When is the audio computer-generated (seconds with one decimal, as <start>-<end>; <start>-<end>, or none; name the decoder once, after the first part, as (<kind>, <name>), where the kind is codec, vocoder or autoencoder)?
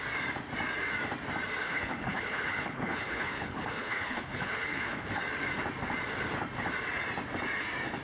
1.6-5.2 (codec, HILCodec)